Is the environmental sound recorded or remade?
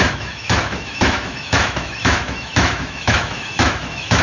remade